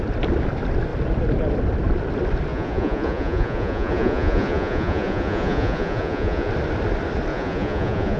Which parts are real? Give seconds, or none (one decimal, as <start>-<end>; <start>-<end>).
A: 0.0-2.5; 6.5-7.3